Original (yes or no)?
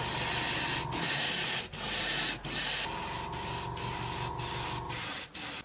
yes